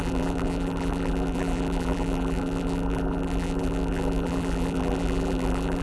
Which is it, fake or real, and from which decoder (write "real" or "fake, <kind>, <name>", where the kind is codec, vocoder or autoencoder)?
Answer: fake, vocoder, BigVGAN v2